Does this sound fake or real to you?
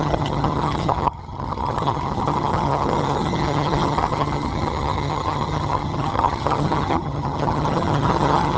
fake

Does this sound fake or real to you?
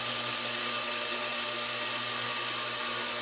real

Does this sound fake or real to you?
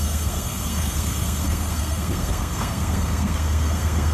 fake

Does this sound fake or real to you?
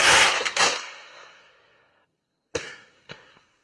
fake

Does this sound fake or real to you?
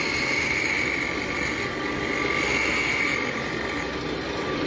real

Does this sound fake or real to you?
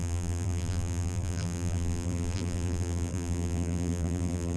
fake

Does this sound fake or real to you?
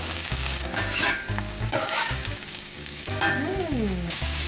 fake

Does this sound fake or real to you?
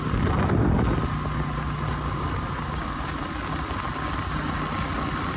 real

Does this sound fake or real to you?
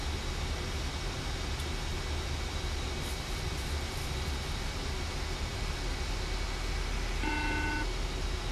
real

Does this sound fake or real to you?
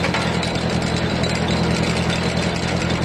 real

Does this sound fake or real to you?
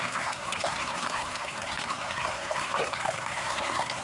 fake